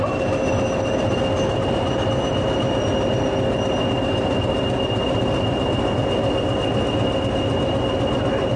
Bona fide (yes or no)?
yes